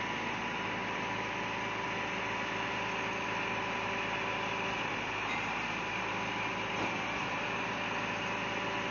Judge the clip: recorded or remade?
recorded